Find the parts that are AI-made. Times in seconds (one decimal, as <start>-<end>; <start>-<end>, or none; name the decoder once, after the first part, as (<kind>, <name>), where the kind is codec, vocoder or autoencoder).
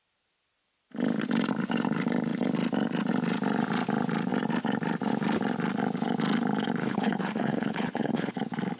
6.8-8.3 (codec, HILCodec)